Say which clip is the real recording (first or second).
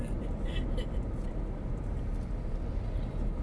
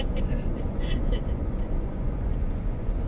first